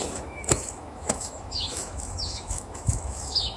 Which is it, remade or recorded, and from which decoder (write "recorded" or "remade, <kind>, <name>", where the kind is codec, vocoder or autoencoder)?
remade, autoencoder, DAC-VAE